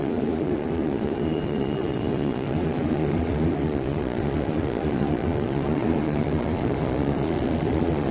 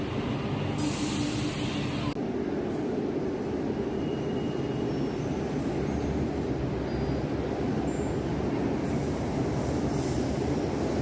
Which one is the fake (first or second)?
first